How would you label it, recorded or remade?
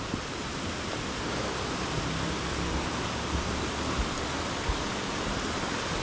recorded